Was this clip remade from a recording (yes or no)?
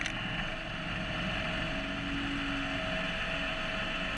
no